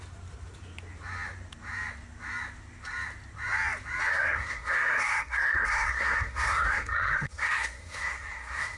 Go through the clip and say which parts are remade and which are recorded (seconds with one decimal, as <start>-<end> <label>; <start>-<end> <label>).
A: 0.0-4.1 recorded; 4.1-8.8 remade